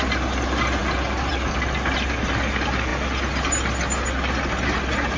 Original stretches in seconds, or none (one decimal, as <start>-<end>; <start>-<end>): 0.0-5.2